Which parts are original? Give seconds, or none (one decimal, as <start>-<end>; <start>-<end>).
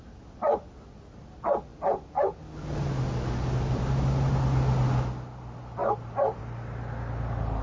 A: 0.0-7.6